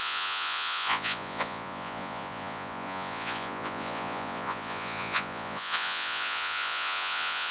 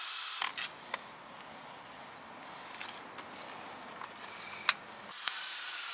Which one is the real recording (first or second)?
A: second